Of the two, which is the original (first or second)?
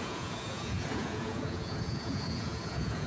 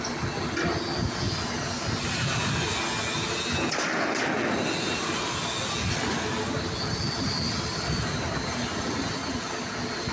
second